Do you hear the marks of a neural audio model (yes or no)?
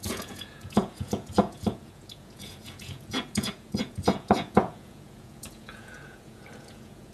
yes